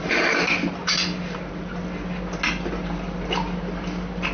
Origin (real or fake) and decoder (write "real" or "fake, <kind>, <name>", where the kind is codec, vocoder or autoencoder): real